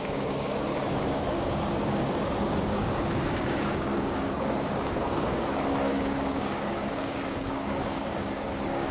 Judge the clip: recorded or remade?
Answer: remade